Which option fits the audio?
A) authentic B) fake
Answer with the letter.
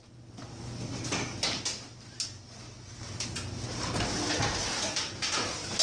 A